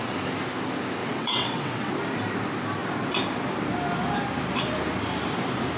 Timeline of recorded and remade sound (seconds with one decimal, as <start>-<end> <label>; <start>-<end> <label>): 0.0-1.0 recorded; 1.0-1.9 remade; 1.9-5.8 recorded